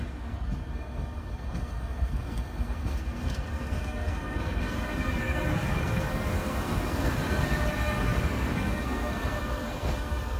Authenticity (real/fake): fake